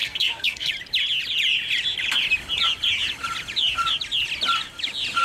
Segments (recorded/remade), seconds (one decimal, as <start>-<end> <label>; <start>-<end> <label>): 0.0-0.7 remade; 0.7-5.2 recorded